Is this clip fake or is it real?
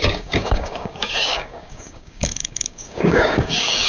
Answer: fake